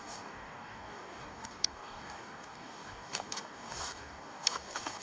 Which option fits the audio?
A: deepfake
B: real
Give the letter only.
A